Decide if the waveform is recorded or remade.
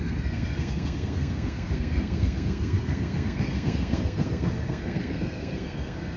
remade